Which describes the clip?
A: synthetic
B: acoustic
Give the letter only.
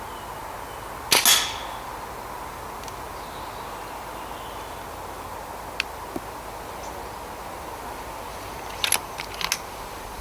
B